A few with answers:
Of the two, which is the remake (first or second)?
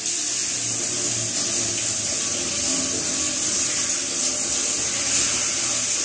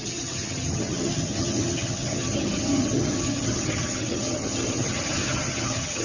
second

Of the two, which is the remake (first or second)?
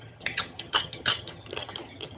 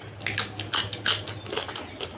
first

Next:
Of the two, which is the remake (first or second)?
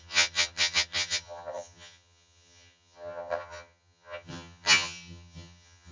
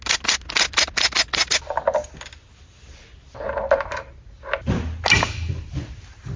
first